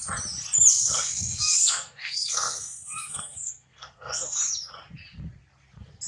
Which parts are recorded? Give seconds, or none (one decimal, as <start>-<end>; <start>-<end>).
0.0-0.7; 4.4-6.1